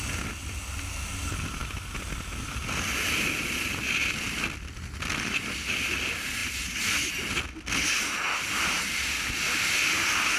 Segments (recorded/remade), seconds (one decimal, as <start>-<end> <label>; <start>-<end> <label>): 0.0-10.4 recorded